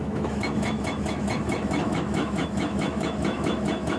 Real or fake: fake